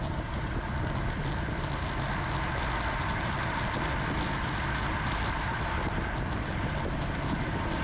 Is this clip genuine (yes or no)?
yes